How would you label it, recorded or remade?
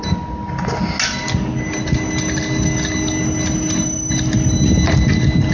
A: recorded